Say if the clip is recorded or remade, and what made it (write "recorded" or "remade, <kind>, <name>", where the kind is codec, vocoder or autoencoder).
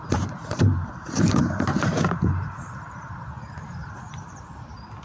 remade, vocoder, BigVGAN v2